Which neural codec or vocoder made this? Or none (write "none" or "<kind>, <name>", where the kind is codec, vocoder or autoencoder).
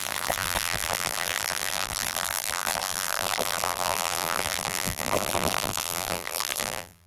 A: vocoder, BigVGAN v2